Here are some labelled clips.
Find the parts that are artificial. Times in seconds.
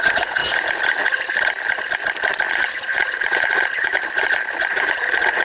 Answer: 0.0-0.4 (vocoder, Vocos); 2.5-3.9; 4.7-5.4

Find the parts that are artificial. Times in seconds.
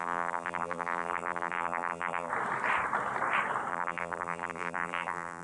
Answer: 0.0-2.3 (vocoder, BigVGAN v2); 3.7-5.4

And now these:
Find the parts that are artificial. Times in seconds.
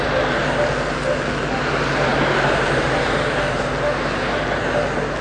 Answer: none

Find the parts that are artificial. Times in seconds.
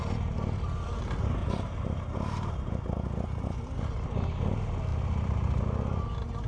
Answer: 1.4-2.8 (vocoder, BigVGAN v2); 4.9-5.6